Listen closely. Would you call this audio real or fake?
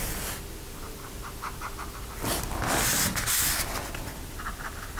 real